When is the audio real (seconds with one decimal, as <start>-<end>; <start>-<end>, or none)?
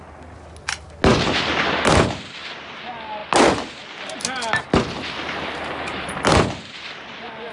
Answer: 0.0-7.5